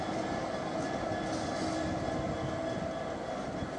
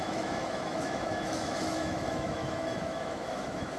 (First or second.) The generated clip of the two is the second